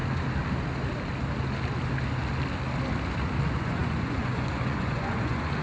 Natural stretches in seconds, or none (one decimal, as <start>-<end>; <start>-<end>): 0.0-3.4